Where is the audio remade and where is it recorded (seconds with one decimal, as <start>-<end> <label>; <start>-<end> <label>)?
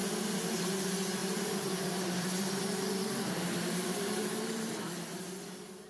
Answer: 0.0-1.2 recorded; 1.2-4.7 remade; 4.7-5.9 recorded